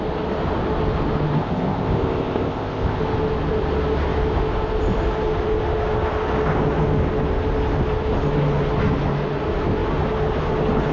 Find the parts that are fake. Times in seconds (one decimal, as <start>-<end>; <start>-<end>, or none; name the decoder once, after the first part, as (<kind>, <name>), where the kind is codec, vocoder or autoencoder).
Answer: 1.4-3.0 (codec, ZipCodec)